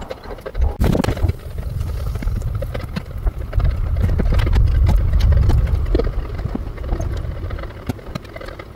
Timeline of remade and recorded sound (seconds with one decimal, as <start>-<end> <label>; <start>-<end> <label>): 0.0-8.8 recorded